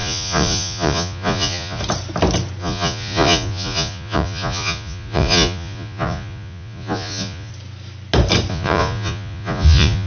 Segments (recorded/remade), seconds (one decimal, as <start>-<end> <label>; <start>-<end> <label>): 0.0-1.8 remade; 1.8-2.6 recorded; 2.6-7.5 remade; 7.5-8.5 recorded; 8.5-10.1 remade

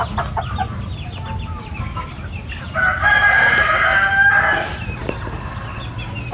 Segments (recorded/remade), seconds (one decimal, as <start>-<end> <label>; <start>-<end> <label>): 0.0-6.3 recorded

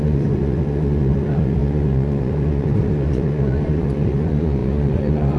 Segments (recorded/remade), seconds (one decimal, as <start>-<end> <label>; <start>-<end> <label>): 0.0-5.4 remade

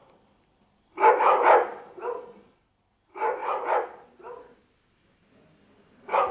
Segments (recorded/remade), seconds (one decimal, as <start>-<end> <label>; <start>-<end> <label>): 0.0-6.3 recorded